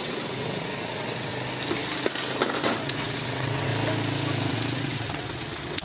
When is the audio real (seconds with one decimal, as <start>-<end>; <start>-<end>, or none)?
1.3-2.6; 3.7-4.5